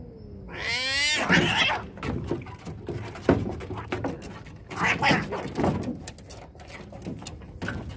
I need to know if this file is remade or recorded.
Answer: recorded